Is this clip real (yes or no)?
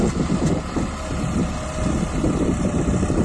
yes